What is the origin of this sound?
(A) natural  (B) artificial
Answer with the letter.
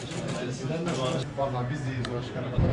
B